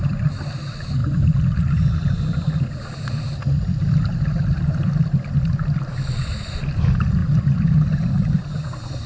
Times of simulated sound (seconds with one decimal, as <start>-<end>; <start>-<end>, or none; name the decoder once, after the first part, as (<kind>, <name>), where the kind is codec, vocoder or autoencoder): none